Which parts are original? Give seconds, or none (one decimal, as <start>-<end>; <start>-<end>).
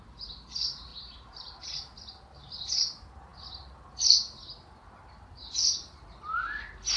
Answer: 0.0-0.9; 1.6-7.0